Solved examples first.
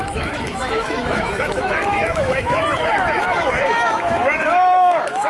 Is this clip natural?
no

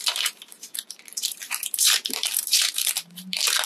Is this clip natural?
no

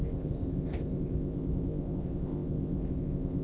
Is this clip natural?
no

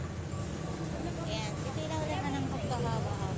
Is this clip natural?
yes